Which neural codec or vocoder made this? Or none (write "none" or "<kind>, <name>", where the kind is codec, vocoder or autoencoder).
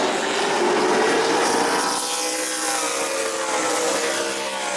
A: none